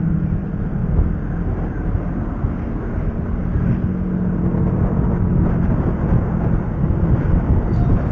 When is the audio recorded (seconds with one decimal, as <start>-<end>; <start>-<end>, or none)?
0.0-8.1